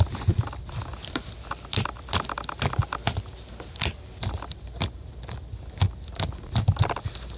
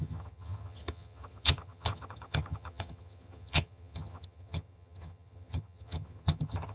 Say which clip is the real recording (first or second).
first